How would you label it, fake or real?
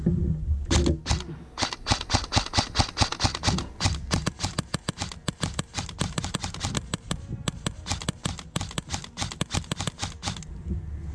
real